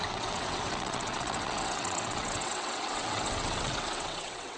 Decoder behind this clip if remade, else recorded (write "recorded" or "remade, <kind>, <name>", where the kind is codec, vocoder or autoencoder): remade, vocoder, WaveNeXt